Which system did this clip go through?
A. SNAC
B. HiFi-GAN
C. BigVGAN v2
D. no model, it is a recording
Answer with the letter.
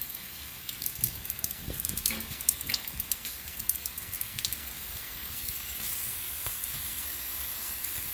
A